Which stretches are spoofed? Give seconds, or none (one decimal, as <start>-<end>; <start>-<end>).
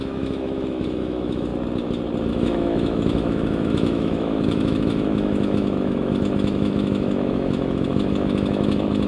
0.0-1.5; 2.3-9.1